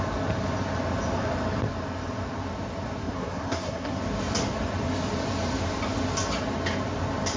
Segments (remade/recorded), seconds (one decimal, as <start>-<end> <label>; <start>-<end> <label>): 0.0-3.0 recorded; 3.0-4.0 remade; 4.0-7.4 recorded